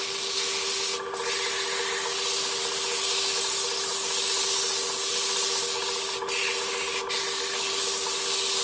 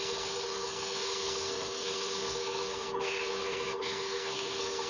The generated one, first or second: second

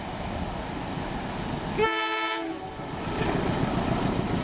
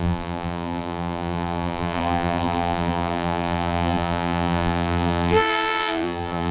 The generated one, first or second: second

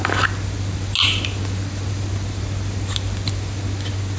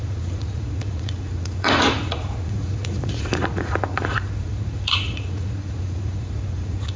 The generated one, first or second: second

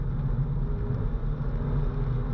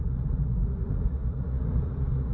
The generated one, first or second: second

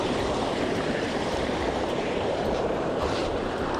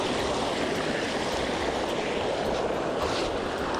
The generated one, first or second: first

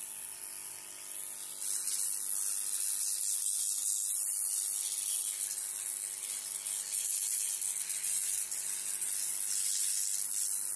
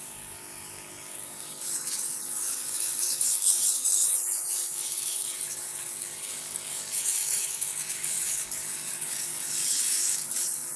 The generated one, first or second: second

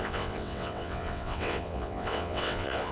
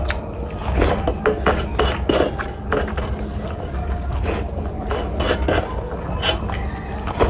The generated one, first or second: first